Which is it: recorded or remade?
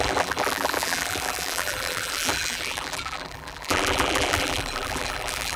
remade